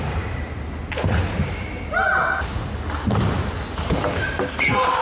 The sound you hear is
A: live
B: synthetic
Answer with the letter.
A